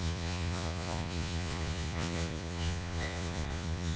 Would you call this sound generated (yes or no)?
yes